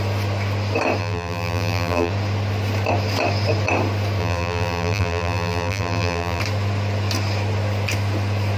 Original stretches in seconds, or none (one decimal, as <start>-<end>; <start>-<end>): 0.0-1.0; 2.1-4.2; 6.4-8.6